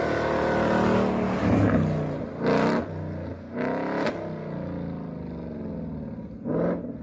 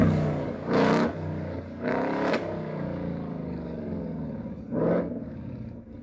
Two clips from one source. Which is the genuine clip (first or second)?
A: first